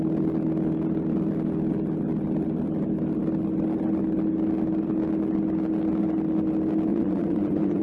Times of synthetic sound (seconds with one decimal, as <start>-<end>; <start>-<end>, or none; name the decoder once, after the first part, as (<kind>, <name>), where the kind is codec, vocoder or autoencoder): 6.9-7.8 (vocoder, Vocos)